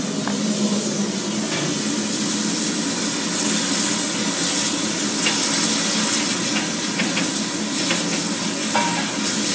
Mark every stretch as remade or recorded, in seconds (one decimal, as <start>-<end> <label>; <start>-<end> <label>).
0.0-9.5 recorded